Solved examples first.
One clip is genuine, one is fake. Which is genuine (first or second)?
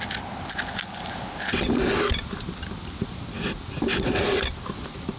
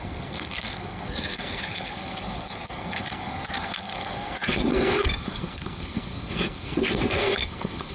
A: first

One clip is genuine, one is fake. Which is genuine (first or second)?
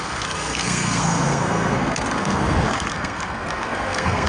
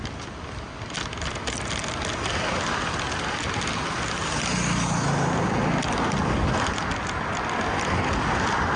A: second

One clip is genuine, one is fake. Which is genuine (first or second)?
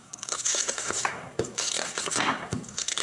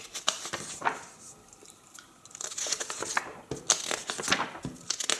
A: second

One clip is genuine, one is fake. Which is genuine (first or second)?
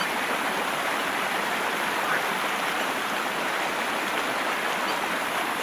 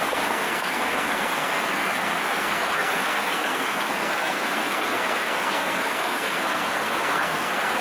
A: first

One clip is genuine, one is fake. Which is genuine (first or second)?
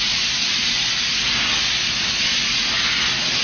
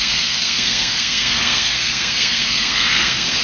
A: first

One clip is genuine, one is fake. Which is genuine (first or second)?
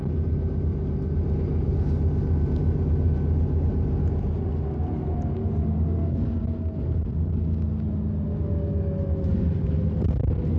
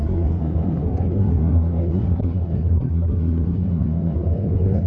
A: first